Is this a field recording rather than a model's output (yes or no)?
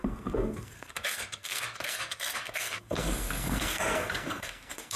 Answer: no